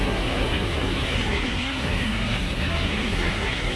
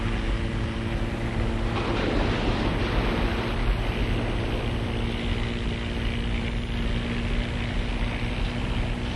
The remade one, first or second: first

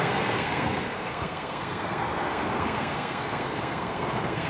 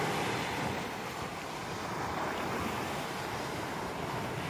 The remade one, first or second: first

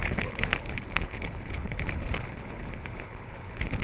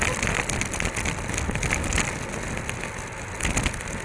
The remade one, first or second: first